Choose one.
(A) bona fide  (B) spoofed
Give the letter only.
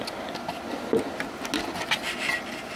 A